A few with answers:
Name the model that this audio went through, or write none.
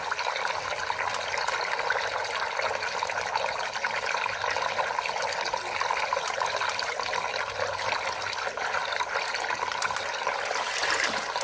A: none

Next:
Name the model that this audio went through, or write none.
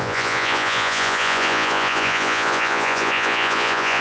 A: vocoder, Vocos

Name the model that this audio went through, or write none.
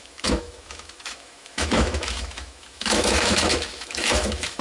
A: autoencoder, DAC-VAE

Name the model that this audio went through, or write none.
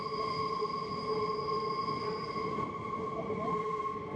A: none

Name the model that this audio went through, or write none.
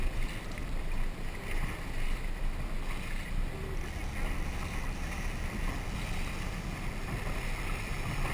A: none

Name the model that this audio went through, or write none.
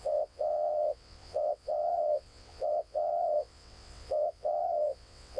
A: vocoder, WaveNeXt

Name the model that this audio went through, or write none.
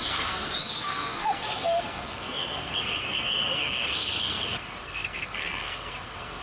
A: codec, SNAC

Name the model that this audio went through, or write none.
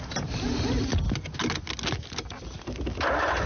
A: none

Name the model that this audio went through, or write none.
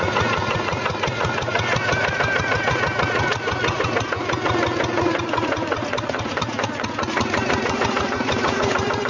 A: vocoder, Vocos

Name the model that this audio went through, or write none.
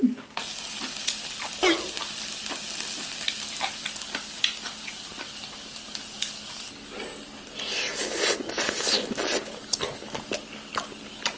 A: none